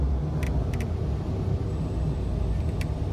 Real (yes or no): yes